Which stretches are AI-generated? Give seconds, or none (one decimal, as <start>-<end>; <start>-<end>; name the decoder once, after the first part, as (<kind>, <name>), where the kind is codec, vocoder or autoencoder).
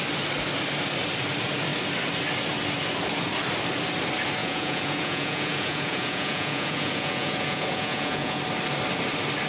4.4-8.4 (vocoder, Vocos)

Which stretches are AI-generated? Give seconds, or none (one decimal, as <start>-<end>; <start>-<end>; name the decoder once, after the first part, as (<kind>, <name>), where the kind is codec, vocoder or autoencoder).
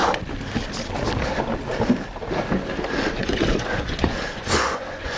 3.1-5.2 (vocoder, Vocos)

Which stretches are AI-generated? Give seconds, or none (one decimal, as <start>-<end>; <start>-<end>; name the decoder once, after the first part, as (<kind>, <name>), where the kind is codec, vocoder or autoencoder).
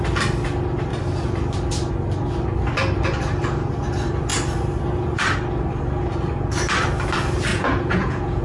7.5-8.4 (vocoder, Vocos)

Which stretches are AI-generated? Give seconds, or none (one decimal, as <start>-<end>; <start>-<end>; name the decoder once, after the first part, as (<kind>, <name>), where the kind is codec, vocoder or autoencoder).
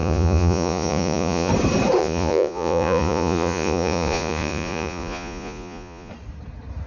0.0-1.5 (vocoder, Vocos); 2.0-6.1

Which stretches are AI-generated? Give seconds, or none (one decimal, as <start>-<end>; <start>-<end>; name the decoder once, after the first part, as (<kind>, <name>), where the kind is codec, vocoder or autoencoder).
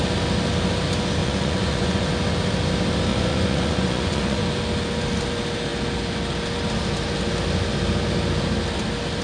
1.2-2.1 (vocoder, Vocos); 3.1-4.4